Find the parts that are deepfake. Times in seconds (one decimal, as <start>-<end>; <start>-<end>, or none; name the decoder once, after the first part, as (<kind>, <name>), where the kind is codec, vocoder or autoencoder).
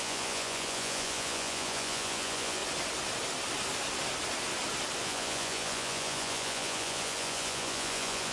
0.0-2.6 (vocoder, Vocos); 5.0-8.3